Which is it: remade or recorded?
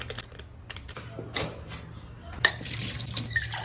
recorded